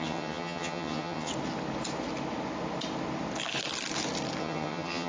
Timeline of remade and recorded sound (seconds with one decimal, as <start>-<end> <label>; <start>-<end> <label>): 0.0-1.3 remade; 1.3-4.4 recorded; 4.4-5.1 remade